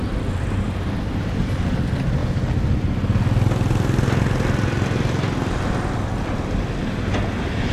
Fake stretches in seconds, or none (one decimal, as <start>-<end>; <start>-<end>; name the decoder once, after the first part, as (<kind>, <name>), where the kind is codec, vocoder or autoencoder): 0.0-1.3 (vocoder, BigVGAN v2)